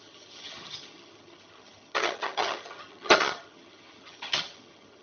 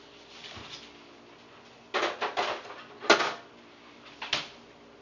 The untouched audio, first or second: second